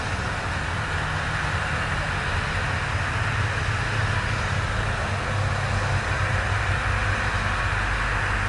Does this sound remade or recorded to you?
recorded